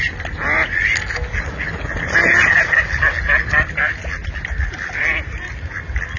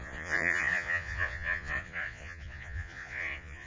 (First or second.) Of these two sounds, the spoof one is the second